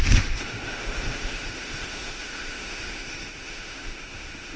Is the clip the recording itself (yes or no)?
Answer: no